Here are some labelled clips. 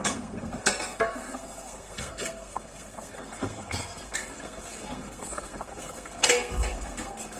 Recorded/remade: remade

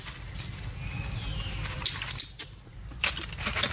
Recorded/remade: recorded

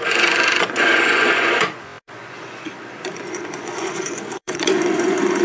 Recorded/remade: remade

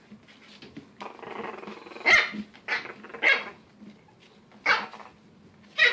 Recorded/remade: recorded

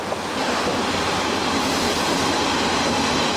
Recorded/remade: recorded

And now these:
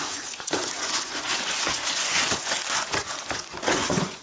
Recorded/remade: remade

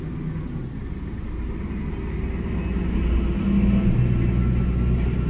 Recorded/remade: recorded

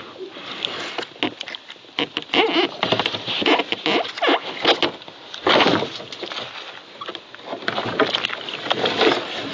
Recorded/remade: recorded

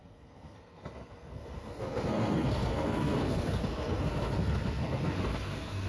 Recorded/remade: remade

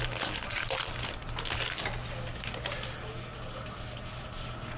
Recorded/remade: recorded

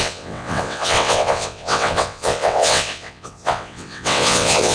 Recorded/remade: remade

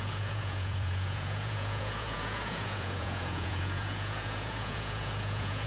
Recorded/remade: remade